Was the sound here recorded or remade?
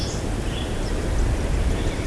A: recorded